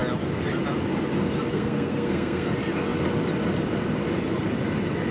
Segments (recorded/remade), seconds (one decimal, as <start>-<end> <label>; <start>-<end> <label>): 0.0-1.5 recorded; 1.5-2.5 remade; 2.5-5.1 recorded